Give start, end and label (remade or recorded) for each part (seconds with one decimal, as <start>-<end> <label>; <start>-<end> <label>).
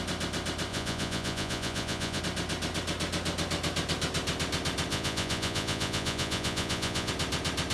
0.0-0.7 recorded; 0.7-2.2 remade; 2.2-4.9 recorded; 4.9-7.1 remade; 7.1-7.7 recorded